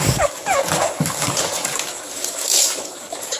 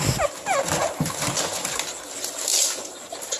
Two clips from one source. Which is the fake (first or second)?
first